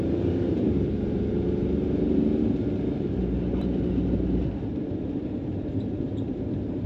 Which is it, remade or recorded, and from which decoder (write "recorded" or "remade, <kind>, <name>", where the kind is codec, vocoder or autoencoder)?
remade, vocoder, BigVGAN v2